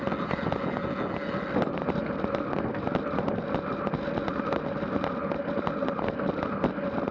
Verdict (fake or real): real